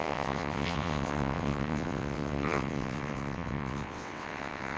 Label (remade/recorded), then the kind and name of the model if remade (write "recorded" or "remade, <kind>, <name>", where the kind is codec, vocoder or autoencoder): remade, vocoder, WaveNeXt